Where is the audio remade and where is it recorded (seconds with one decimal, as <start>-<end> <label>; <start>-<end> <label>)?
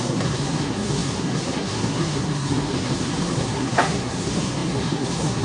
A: 0.0-5.4 remade